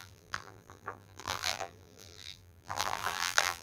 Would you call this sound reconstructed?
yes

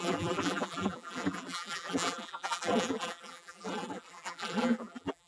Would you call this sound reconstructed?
yes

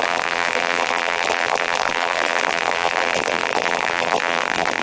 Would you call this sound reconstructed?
yes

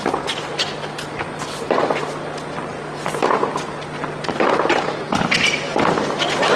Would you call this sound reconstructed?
no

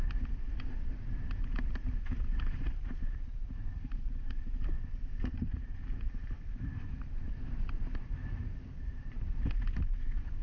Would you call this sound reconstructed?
yes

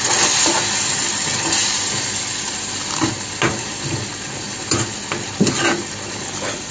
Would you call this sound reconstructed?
no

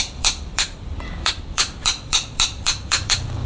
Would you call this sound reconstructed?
yes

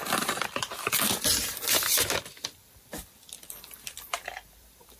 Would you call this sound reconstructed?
yes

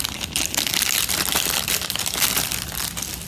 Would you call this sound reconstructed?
yes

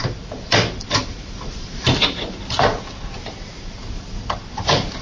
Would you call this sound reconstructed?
yes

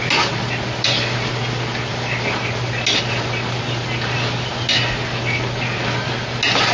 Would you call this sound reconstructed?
no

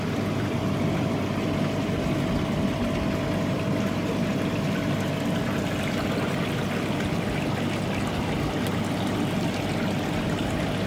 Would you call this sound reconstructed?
no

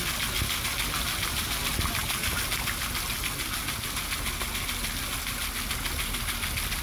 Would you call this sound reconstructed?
no